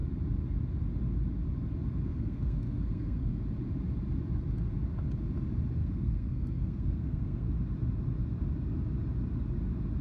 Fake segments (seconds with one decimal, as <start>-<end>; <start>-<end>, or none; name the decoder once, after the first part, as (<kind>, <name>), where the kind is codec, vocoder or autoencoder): 2.1-3.4 (codec, SNAC); 5.8-7.5